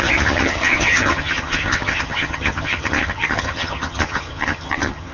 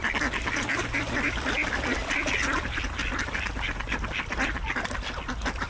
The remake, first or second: first